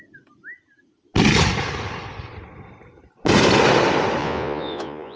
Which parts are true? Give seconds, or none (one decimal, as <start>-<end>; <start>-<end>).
0.0-4.2